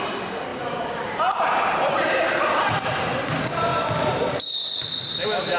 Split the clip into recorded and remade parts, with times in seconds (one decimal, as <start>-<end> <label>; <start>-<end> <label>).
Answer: 0.0-0.5 recorded; 0.5-3.3 remade; 3.3-3.7 recorded; 3.7-5.6 remade